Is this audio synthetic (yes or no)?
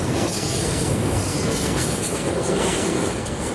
yes